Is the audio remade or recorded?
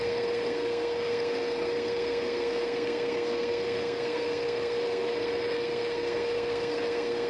remade